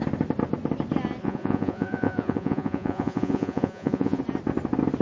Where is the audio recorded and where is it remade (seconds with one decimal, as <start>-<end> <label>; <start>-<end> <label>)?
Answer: 0.0-1.2 recorded; 1.2-4.2 remade; 4.2-5.0 recorded